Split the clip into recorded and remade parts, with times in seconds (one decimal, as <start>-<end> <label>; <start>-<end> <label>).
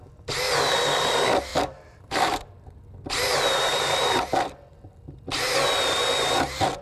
0.0-1.5 recorded; 1.5-2.8 remade; 2.8-3.7 recorded; 3.7-4.2 remade; 4.2-6.8 recorded